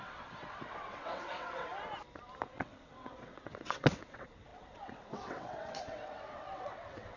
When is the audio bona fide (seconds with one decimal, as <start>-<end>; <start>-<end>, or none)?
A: 1.7-2.5